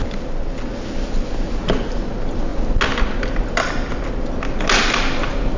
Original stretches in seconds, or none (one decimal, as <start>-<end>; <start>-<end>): 0.0-5.6